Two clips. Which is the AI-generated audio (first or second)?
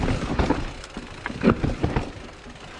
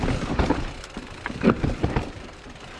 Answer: second